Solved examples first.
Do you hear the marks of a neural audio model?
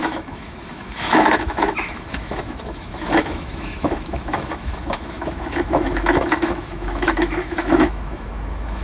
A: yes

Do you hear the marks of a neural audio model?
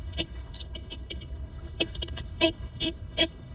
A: yes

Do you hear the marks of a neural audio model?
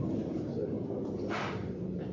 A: yes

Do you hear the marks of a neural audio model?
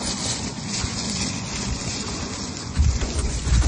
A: yes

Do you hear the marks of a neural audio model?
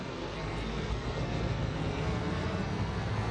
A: yes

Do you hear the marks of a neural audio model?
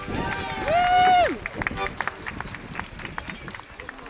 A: no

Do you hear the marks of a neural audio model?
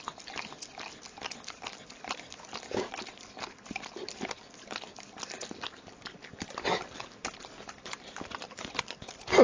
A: no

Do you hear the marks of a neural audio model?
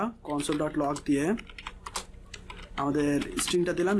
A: no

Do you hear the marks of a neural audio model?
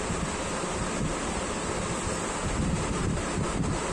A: no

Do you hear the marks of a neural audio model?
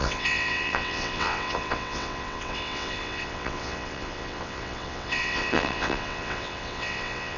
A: yes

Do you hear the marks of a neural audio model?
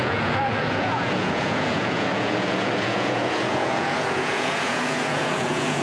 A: yes